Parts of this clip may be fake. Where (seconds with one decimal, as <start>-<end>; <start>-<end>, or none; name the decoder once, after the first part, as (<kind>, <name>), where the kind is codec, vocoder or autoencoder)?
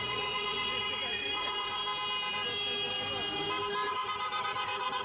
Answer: 0.0-1.8 (vocoder, Vocos); 3.9-5.0